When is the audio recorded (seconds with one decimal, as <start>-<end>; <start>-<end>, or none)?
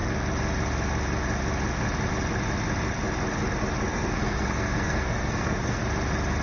0.0-3.9; 5.9-6.4